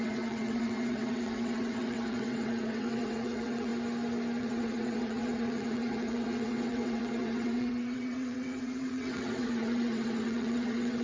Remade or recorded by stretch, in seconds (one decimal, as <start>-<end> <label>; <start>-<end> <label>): 0.0-3.7 remade; 3.7-4.4 recorded; 4.4-11.0 remade